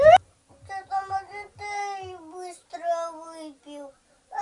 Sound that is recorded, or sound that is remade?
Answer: recorded